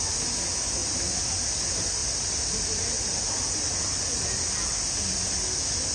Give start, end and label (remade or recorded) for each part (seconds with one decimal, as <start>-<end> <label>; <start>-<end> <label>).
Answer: 0.0-2.0 recorded; 2.0-4.9 remade; 4.9-5.9 recorded